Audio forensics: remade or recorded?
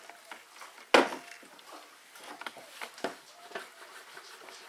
recorded